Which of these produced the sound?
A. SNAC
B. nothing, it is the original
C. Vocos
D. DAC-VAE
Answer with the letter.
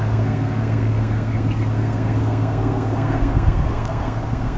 A